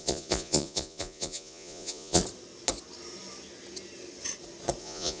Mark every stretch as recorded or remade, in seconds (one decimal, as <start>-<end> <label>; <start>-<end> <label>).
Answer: 0.0-2.2 remade; 2.2-4.8 recorded; 4.8-5.2 remade